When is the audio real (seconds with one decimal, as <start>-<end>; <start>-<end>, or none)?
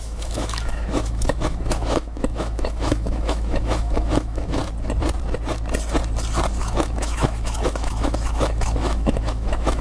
4.6-6.6